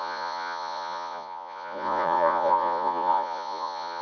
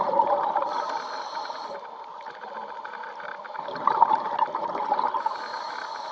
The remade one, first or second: first